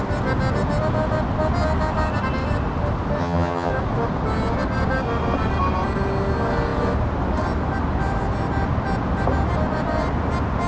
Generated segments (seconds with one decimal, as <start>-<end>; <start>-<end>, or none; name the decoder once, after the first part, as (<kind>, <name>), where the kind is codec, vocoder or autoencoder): 3.2-3.7 (vocoder, HiFi-GAN)